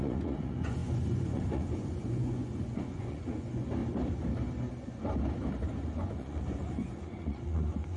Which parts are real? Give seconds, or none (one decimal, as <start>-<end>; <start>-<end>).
3.8-5.9